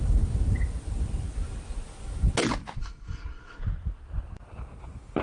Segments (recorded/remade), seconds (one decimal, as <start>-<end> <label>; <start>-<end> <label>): 0.0-2.8 recorded; 2.8-3.6 remade; 3.6-5.2 recorded